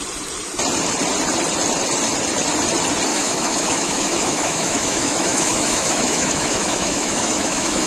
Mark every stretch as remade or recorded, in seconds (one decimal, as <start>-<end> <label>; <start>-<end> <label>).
0.0-3.1 recorded; 3.1-7.9 remade

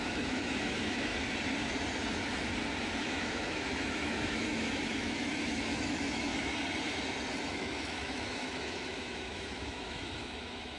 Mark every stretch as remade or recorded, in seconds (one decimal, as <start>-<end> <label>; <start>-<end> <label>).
0.0-1.1 remade; 1.1-3.0 recorded; 3.0-6.3 remade; 6.3-7.5 recorded; 7.5-10.8 remade

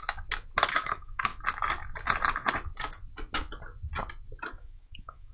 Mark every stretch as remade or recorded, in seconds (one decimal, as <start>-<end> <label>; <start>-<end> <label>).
0.0-0.7 recorded; 0.7-1.3 remade; 1.3-4.5 recorded; 4.5-5.3 remade

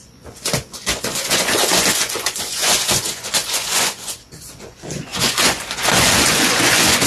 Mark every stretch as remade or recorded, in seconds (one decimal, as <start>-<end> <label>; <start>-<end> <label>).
0.0-7.1 remade

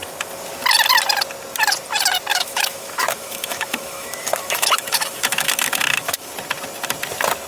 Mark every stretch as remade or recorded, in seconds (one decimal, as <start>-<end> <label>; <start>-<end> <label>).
0.0-2.3 recorded; 2.3-6.3 remade; 6.3-7.5 recorded

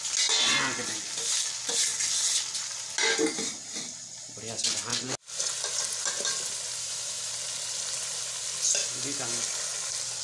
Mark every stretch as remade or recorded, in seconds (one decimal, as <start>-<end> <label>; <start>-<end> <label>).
0.0-6.8 recorded; 6.8-7.3 remade; 7.3-8.8 recorded; 8.8-9.4 remade; 9.4-10.2 recorded

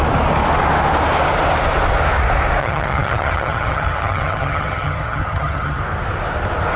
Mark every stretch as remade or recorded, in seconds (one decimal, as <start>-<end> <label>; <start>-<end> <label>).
0.0-2.6 recorded; 2.6-5.8 remade; 5.8-6.8 recorded